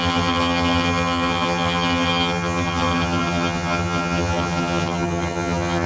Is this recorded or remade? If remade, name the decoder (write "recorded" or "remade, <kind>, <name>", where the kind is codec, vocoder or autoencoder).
remade, vocoder, HiFi-GAN